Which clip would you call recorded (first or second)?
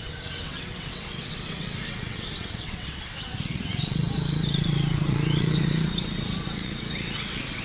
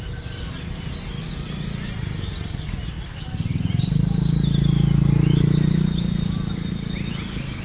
second